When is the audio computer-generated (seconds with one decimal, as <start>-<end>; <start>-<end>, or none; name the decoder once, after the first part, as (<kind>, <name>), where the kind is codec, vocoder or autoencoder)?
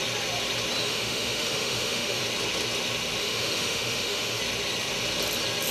0.8-2.2 (autoencoder, DAC-VAE); 3.2-4.4